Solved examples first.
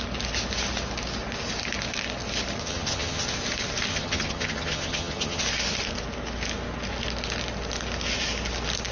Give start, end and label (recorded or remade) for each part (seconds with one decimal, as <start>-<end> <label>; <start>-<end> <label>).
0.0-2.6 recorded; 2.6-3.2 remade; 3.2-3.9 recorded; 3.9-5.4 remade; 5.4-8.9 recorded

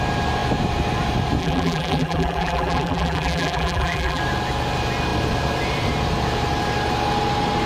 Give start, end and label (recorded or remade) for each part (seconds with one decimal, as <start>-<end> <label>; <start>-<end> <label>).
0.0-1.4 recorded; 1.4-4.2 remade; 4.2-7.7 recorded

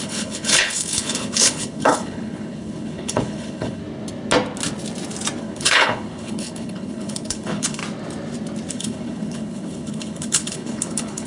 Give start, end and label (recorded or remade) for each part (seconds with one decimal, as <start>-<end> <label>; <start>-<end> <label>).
0.0-3.8 remade; 3.8-5.4 recorded; 5.4-7.8 remade; 7.8-8.7 recorded; 8.7-11.3 remade

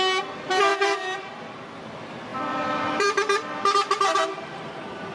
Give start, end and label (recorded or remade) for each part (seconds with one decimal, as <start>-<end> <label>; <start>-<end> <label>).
0.0-0.7 recorded; 0.7-1.4 remade; 1.4-2.3 recorded; 2.3-4.6 remade; 4.6-5.1 recorded

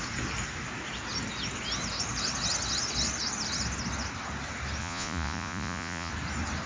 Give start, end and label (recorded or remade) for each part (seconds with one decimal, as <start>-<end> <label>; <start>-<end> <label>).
0.0-4.8 recorded; 4.8-6.1 remade; 6.1-6.7 recorded